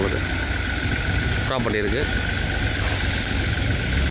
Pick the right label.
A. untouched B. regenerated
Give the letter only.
A